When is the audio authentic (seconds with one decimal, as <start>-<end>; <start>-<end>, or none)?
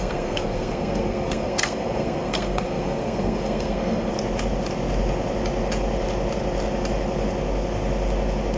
4.1-8.6